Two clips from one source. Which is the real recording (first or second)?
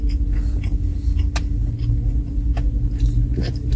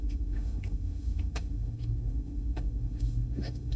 first